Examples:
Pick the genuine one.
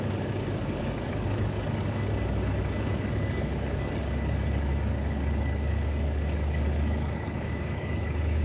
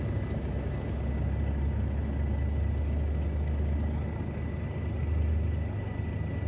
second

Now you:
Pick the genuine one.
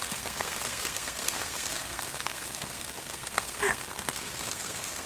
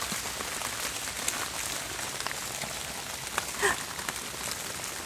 second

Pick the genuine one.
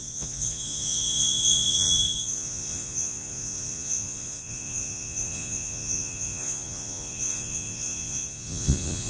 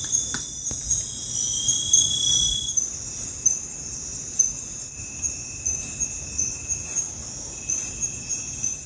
second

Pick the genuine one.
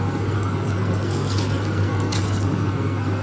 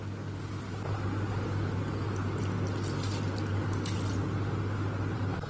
second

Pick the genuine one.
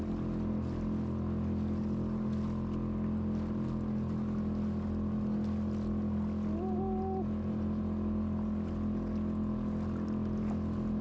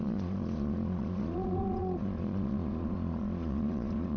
first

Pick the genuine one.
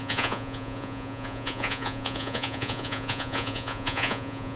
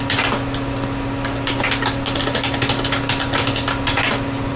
second